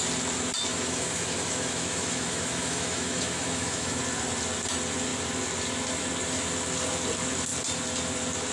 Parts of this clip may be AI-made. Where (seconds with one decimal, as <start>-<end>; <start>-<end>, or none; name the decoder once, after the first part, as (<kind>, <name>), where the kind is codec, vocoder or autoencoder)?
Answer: 0.7-4.0 (autoencoder, DAC-VAE)